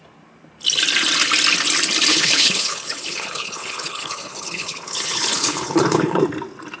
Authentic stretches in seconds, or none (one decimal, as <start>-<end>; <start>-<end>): 0.0-2.1; 6.2-6.8

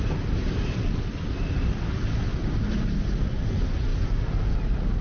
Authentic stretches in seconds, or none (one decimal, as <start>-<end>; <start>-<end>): 0.0-5.0